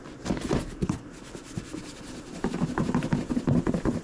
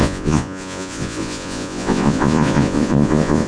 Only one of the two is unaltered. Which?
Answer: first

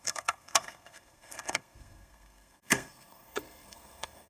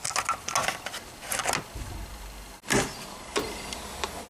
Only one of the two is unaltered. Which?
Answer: second